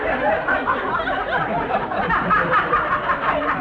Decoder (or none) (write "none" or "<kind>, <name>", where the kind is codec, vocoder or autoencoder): none